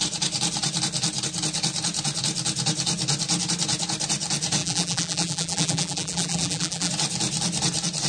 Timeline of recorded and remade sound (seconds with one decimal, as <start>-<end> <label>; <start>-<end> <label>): 0.0-4.6 recorded; 4.6-6.9 remade; 6.9-8.1 recorded